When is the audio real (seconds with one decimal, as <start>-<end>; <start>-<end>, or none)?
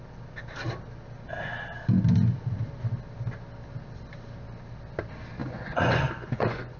0.0-5.4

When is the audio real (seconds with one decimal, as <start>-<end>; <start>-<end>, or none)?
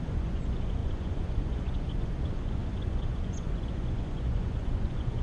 none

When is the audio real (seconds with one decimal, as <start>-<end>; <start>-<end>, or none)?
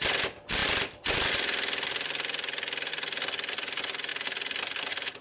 0.0-5.2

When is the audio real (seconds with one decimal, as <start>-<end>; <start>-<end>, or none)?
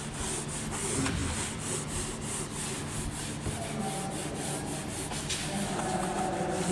0.0-6.7